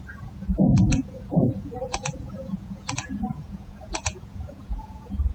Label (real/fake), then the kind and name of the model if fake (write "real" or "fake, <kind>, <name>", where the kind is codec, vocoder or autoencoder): fake, vocoder, Vocos